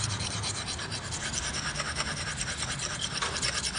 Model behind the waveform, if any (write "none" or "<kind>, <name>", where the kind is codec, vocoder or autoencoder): none